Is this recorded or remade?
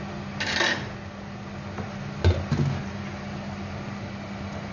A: recorded